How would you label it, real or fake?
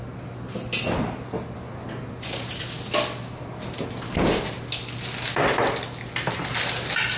real